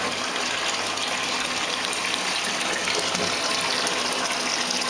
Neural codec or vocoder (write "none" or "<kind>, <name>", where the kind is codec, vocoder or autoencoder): none